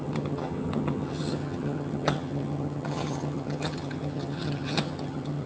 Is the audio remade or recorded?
remade